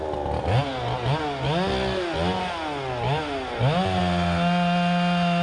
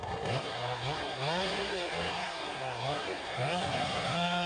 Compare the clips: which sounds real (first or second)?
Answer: first